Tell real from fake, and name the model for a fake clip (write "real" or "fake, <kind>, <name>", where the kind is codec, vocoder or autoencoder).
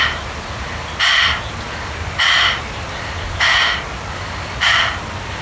real